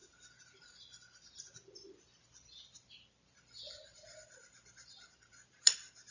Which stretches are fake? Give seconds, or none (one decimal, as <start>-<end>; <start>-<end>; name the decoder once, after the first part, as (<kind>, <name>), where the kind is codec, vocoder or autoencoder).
0.0-6.1 (vocoder, BigVGAN v2)